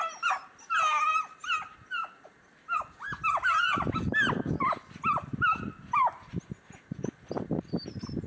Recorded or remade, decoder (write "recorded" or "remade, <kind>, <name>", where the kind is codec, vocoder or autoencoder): recorded